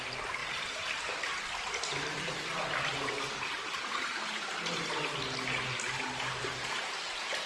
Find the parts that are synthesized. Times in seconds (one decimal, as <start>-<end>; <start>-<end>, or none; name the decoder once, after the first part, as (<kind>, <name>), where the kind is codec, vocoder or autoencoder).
none